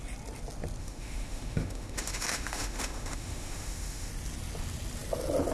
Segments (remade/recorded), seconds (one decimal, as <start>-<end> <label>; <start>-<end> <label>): 0.0-0.8 recorded; 0.8-4.1 remade; 4.1-5.5 recorded